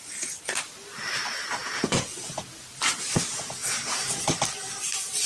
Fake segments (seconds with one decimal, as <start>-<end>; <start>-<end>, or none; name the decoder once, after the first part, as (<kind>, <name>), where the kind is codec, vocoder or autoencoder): 1.6-2.4 (vocoder, Vocos); 3.6-4.2